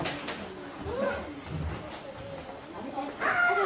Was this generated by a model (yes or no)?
no